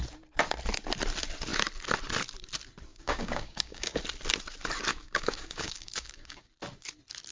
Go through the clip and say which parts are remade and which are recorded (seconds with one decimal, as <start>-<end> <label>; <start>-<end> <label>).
0.0-2.9 recorded; 2.9-4.0 remade; 4.0-4.9 recorded; 4.9-6.5 remade; 6.5-7.3 recorded